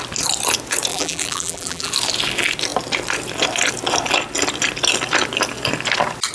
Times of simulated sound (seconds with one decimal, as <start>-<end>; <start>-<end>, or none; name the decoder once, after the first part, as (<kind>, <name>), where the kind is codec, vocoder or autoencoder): 0.9-1.9 (vocoder, BigVGAN v2)